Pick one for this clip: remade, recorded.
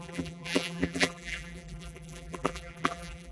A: remade